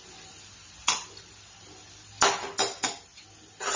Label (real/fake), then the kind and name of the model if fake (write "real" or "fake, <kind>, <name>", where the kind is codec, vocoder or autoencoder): real